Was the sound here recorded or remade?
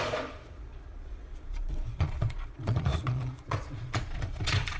remade